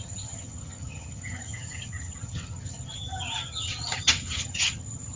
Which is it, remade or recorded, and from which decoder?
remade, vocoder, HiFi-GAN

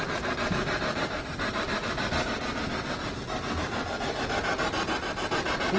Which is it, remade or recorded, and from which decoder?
recorded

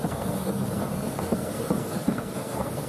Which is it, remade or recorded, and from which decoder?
remade, codec, SNAC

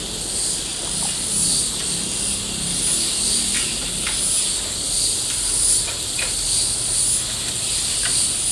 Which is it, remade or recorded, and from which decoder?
recorded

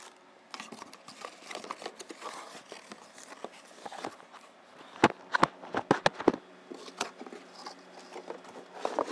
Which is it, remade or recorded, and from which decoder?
recorded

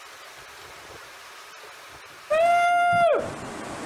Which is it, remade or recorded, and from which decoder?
recorded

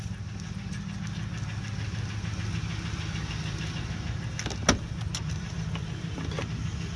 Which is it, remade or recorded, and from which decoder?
recorded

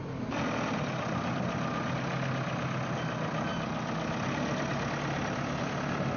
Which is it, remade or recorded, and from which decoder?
recorded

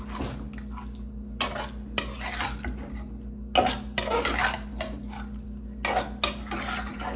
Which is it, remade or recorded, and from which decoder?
recorded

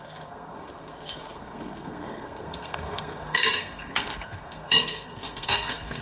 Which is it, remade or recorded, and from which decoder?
remade, codec, SNAC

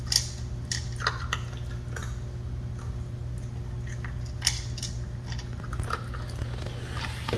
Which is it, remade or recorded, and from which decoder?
recorded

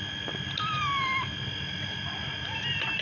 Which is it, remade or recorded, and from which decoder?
recorded